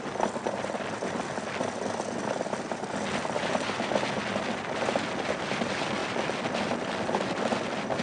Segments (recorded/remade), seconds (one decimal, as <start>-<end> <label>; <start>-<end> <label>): 0.0-8.0 recorded